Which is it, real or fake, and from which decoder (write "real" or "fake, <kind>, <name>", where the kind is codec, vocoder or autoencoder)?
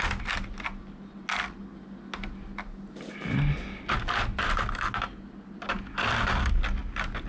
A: real